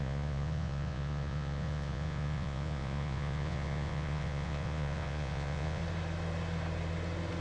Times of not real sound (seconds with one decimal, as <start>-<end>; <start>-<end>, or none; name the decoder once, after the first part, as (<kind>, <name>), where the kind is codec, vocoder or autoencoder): 0.0-5.8 (vocoder, Vocos)